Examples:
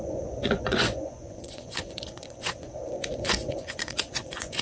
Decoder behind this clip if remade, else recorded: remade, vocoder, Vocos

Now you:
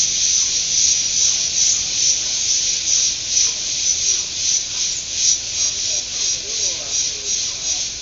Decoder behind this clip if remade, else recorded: recorded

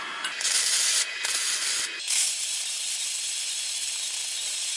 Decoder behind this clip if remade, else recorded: recorded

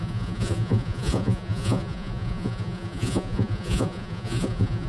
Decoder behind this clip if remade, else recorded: remade, vocoder, Vocos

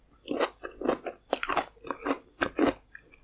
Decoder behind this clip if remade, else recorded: recorded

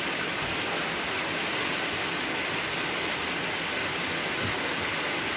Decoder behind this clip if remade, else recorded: recorded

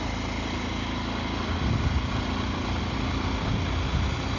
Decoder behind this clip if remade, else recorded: recorded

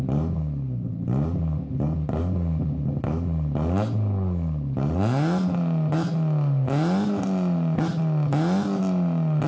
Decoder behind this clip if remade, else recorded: recorded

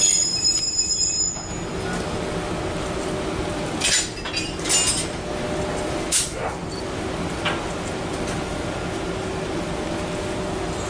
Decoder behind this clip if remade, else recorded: recorded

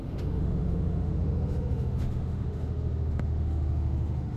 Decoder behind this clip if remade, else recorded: remade, autoencoder, DAC-VAE